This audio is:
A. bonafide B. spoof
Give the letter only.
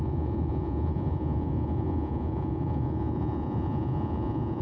B